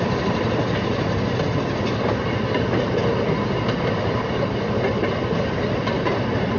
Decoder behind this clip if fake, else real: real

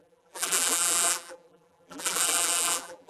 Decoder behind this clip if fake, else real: fake, vocoder, BigVGAN v2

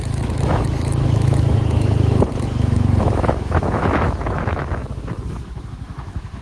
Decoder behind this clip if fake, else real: fake, autoencoder, DAC-VAE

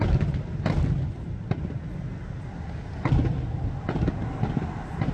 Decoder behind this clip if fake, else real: real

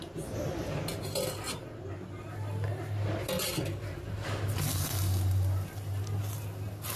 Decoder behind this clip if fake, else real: real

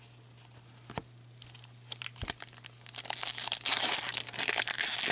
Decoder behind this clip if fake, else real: real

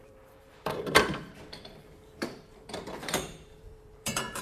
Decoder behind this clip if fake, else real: fake, vocoder, BigVGAN v2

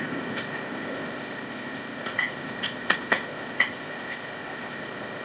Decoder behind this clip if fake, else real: fake, codec, ZipCodec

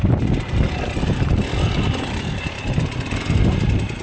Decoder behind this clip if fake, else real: real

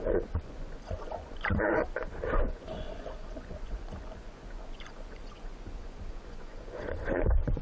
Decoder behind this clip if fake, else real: fake, vocoder, Vocos